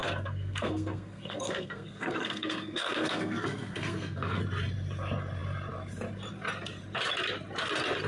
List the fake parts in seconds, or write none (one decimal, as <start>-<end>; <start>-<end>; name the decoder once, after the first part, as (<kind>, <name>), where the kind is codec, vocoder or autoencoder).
0.0-4.4 (codec, SNAC)